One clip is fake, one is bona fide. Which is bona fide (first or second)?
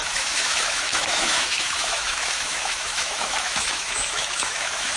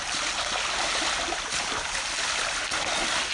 second